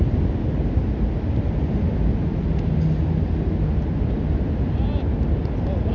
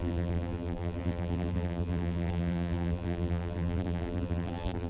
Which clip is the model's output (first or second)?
second